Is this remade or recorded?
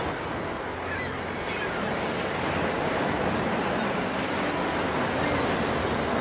recorded